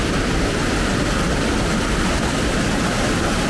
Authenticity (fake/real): real